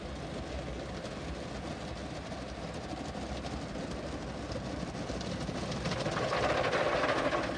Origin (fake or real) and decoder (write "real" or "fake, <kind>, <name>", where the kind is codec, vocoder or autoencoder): real